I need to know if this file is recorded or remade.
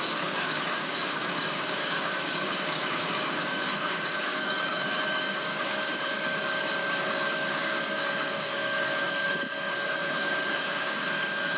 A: remade